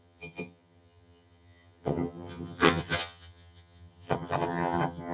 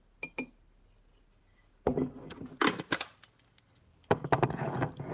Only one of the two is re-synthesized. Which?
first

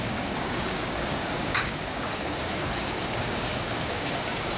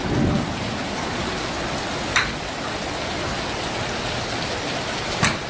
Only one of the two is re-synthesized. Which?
first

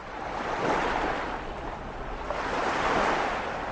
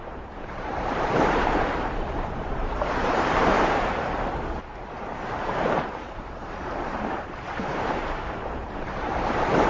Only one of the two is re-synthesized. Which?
second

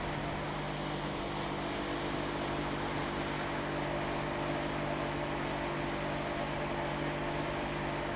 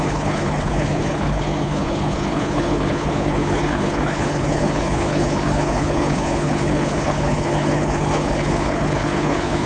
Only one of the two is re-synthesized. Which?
second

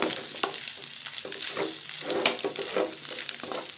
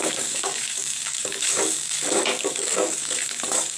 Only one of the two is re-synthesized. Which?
second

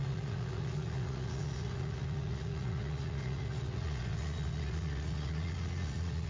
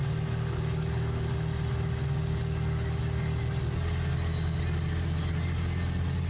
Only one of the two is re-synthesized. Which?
first